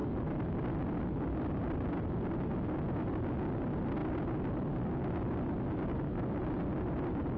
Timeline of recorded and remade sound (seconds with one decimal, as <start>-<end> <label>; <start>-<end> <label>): 0.0-7.4 recorded

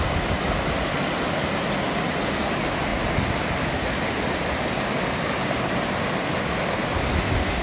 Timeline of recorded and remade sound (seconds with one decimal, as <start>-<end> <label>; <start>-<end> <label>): 0.0-7.6 recorded

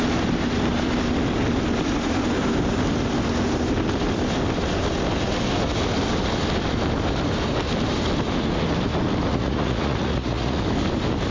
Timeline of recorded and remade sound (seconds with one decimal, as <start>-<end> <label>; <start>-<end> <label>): 0.0-9.3 recorded; 9.3-10.6 remade; 10.6-11.3 recorded

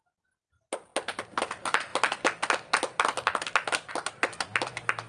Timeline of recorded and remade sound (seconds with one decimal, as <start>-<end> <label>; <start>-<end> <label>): 0.0-5.1 recorded

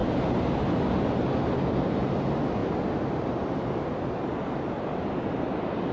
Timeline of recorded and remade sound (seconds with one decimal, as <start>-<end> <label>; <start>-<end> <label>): 0.0-5.9 recorded

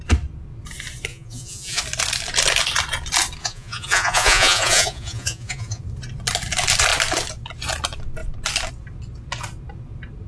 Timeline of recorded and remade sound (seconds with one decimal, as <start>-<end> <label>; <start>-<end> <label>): 0.0-1.1 recorded; 1.1-1.8 remade; 1.8-3.4 recorded; 3.4-5.8 remade; 5.8-10.3 recorded

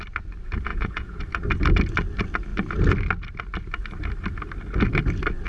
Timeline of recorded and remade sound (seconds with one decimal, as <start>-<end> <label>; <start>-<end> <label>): 0.0-0.7 recorded; 0.7-1.2 remade; 1.2-5.5 recorded